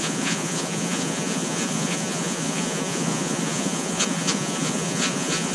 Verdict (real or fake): fake